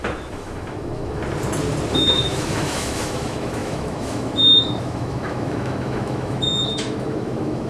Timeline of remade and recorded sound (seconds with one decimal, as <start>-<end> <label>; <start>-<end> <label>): 0.0-1.2 remade; 1.2-1.9 recorded; 1.9-7.7 remade